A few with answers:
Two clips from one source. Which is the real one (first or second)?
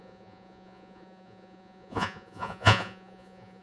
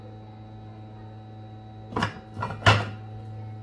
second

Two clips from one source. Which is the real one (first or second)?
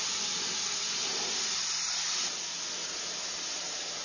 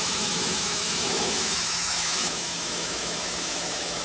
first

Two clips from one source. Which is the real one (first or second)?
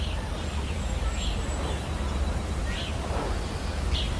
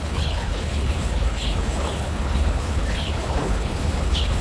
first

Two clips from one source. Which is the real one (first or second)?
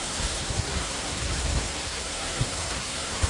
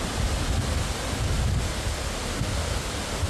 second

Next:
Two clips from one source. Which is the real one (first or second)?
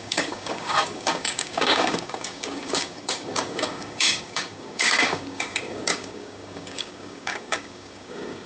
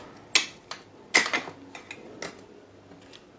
second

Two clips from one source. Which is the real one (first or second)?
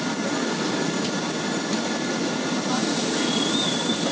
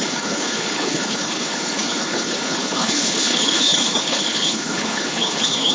first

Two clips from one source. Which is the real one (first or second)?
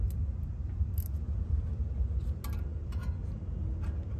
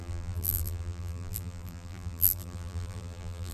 first